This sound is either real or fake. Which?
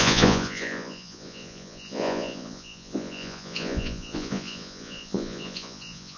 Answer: fake